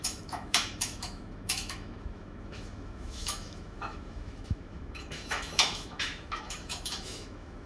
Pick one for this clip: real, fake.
fake